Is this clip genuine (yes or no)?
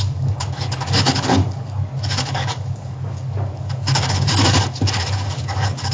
no